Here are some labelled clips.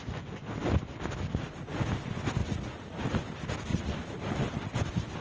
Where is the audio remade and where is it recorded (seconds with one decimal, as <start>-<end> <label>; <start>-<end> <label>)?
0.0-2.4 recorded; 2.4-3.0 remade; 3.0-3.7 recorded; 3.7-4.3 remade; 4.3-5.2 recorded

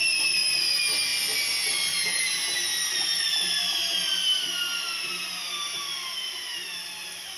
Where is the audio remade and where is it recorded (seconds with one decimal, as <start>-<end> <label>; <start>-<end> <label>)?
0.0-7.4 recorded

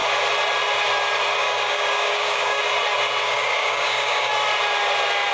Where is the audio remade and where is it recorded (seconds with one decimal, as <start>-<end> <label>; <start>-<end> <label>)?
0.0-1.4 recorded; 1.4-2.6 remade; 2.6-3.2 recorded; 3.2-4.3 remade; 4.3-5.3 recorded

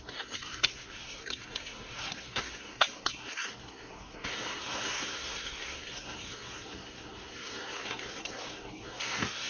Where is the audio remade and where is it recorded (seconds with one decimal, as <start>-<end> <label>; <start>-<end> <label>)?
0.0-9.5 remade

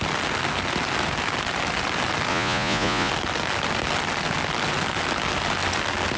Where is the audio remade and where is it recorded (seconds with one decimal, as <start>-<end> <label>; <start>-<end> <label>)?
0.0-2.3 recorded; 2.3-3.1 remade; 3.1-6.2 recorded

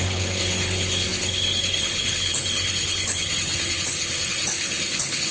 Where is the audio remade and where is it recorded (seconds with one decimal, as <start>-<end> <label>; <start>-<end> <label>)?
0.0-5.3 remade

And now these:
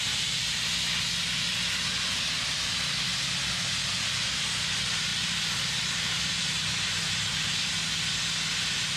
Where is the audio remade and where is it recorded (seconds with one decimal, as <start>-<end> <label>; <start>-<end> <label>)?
0.0-5.1 recorded; 5.1-7.7 remade; 7.7-9.0 recorded